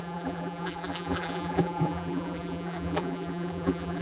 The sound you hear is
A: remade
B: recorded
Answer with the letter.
A